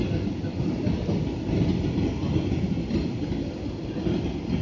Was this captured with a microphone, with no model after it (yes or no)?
yes